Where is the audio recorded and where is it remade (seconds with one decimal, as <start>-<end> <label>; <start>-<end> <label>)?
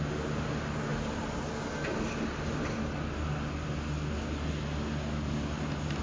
0.0-6.0 recorded